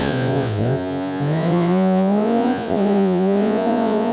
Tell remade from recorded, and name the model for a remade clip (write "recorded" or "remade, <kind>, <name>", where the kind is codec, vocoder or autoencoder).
remade, vocoder, Vocos